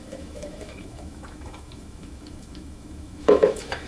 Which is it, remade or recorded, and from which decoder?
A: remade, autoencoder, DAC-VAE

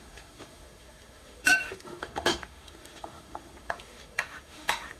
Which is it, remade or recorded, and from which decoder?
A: remade, autoencoder, DAC-VAE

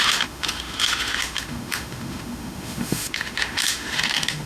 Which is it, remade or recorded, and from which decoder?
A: remade, autoencoder, DAC-VAE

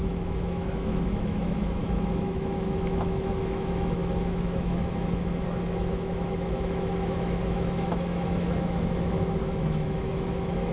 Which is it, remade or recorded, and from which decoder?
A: remade, autoencoder, DAC-VAE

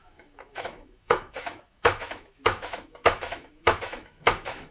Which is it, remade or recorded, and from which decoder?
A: remade, autoencoder, DAC-VAE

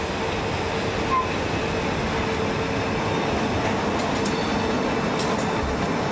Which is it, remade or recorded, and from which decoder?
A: recorded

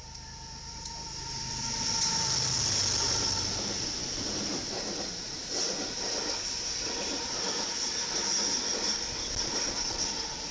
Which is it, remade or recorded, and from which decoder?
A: recorded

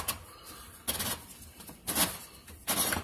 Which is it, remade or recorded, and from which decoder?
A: recorded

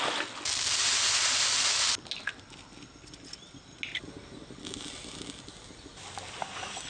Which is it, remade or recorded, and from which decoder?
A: recorded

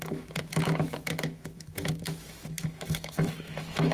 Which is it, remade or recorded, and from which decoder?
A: remade, autoencoder, DAC-VAE